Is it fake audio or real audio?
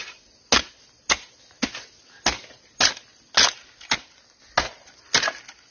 real